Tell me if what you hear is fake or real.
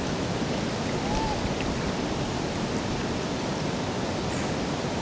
real